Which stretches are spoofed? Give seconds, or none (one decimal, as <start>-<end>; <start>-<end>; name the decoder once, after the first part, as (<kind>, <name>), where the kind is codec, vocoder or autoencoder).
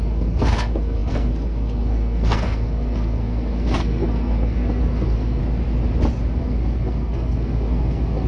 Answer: 0.0-5.4 (codec, SNAC); 6.4-8.3